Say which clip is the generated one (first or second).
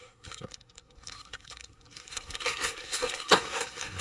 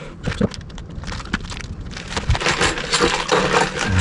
first